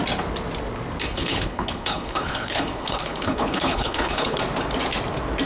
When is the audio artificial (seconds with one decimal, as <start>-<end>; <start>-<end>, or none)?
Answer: 1.1-4.4